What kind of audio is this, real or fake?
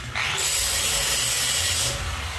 real